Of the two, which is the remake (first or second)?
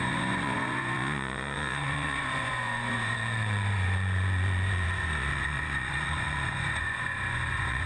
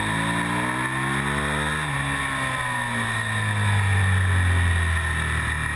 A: first